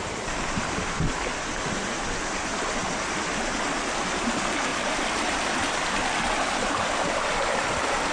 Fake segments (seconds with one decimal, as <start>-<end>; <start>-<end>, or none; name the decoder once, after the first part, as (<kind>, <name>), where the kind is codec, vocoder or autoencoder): 4.7-5.5 (vocoder, BigVGAN v2)